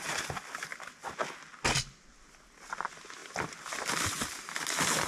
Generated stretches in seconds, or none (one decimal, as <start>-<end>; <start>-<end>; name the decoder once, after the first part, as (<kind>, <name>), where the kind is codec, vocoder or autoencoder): none